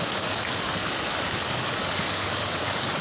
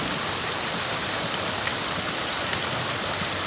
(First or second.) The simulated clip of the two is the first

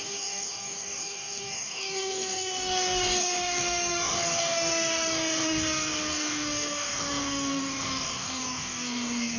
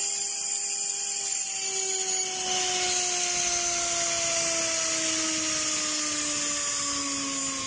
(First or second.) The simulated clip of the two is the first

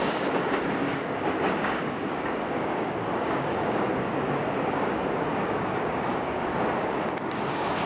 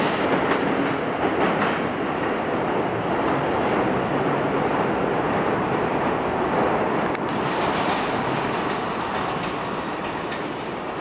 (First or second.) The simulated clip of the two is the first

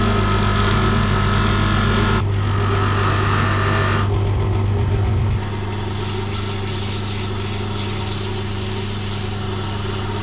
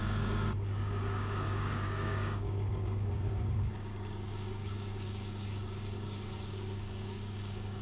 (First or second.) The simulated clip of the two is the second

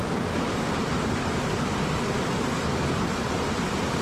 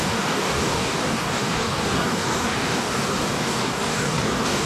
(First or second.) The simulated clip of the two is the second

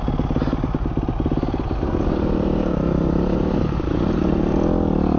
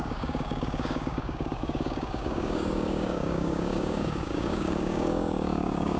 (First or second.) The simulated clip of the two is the second